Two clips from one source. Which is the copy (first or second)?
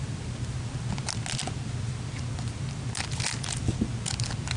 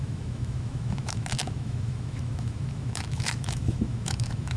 second